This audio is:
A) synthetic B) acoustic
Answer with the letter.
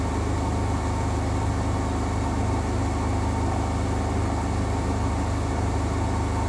B